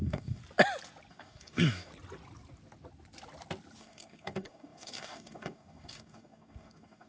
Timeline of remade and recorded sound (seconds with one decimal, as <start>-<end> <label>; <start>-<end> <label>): 0.0-0.4 remade; 0.4-1.1 recorded; 1.1-1.9 remade; 1.9-3.8 recorded; 3.8-7.1 remade